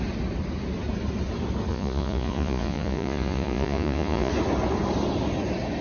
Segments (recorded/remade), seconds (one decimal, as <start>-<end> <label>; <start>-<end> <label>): 0.0-1.7 recorded; 1.7-4.3 remade; 4.3-5.8 recorded